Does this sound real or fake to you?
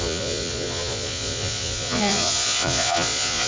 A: fake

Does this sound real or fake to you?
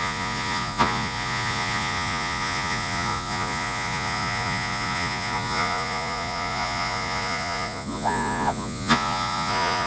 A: fake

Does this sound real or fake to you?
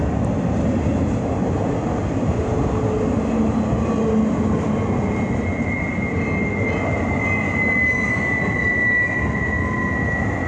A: real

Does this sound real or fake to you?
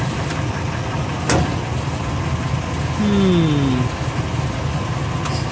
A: real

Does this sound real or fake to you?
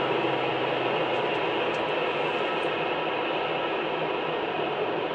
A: real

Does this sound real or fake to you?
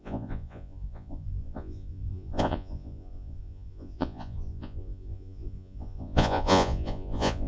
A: fake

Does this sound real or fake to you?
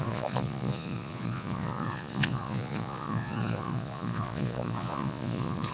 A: fake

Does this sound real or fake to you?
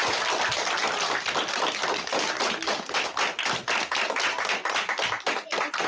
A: real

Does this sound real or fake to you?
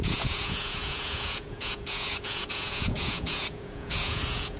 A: fake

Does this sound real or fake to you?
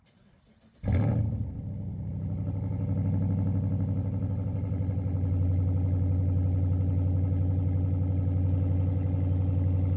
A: real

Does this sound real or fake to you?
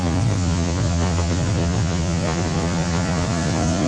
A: fake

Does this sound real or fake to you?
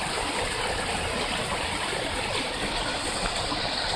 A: real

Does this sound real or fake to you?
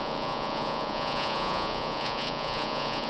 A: fake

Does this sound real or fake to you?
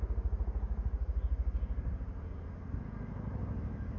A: real